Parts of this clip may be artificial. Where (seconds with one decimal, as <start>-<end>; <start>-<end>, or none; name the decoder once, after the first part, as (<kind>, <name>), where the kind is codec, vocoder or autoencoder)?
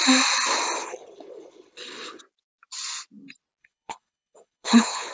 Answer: 0.8-2.2 (codec, HILCodec); 3.6-5.1